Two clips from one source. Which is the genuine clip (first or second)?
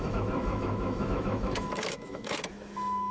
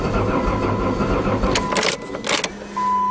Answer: second